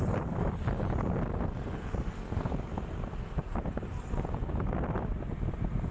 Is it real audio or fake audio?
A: real